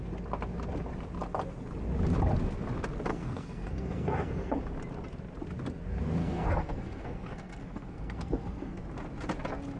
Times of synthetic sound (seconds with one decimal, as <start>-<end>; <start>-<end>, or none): 3.1-4.6; 6.2-8.8